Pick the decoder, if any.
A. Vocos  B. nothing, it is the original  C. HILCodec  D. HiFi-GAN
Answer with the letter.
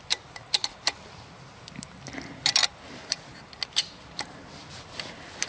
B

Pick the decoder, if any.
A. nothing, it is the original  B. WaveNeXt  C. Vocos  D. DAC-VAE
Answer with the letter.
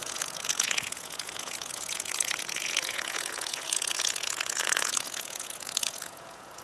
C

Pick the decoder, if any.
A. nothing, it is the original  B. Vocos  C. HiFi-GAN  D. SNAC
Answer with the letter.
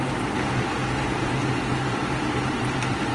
A